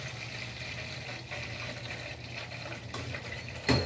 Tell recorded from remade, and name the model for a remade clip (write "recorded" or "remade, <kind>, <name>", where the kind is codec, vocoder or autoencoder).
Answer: recorded